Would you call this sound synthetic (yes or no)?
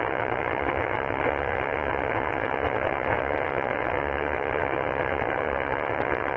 yes